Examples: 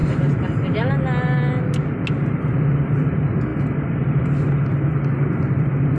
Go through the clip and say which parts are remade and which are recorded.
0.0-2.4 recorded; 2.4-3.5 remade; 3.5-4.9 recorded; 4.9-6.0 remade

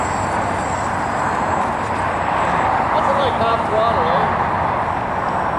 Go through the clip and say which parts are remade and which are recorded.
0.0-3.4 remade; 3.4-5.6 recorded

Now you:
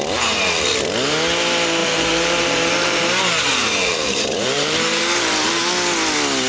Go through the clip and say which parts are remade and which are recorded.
0.0-1.8 recorded; 1.8-5.7 remade; 5.7-6.5 recorded

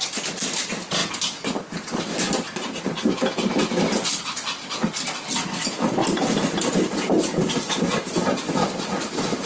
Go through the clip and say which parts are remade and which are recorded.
0.0-6.0 recorded; 6.0-7.0 remade; 7.0-9.5 recorded